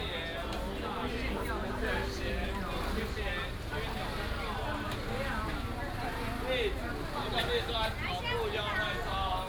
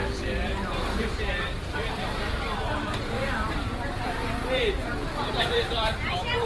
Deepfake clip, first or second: second